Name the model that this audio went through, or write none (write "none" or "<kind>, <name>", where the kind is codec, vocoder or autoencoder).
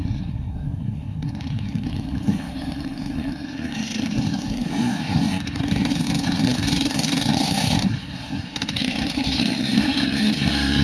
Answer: codec, SNAC